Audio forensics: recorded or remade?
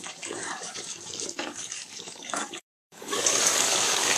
remade